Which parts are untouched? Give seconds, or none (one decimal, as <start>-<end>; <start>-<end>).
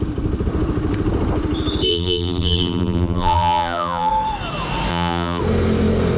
0.0-1.9; 4.1-4.9; 5.4-6.2